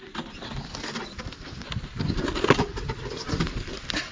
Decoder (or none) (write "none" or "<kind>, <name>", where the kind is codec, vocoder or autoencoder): vocoder, BigVGAN v2